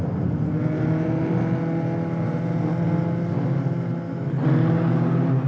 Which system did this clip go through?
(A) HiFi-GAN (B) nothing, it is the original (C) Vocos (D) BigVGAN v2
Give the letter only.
B